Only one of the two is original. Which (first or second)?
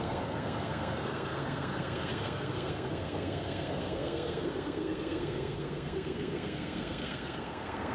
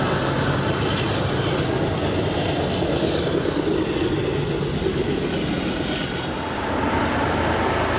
second